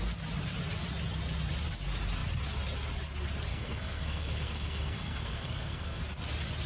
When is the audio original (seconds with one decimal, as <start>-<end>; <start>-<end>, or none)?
0.0-3.5; 6.0-6.7